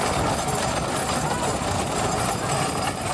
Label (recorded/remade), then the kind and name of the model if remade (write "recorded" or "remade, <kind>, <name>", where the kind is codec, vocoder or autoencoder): recorded